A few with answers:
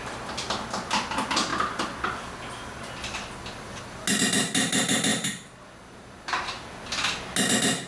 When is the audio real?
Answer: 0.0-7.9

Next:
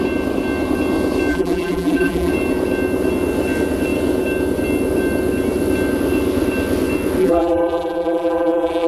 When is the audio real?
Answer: 0.0-1.3; 2.3-7.2

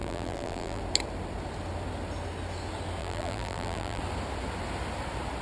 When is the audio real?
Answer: 0.8-3.0; 4.0-5.4

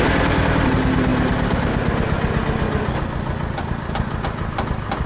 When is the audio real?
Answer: 0.0-5.1

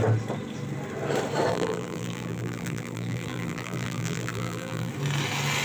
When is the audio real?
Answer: 0.0-1.5; 4.9-5.6

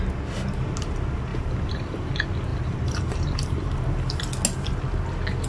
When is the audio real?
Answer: 0.0-1.3; 2.1-2.5; 4.2-5.5